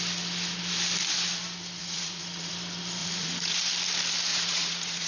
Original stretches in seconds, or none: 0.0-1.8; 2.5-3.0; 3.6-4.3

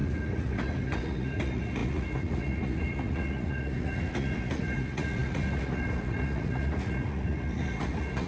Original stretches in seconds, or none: none

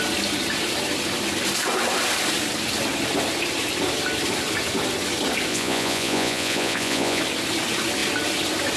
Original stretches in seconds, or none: 0.0-5.5; 7.2-8.8

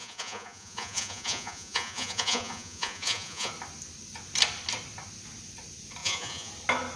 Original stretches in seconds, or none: 3.5-6.0; 6.5-7.0

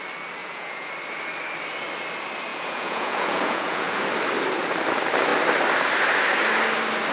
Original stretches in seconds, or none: 0.0-0.4; 0.9-2.5; 4.0-7.1

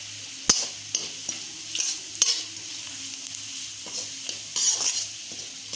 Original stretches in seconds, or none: 0.0-5.8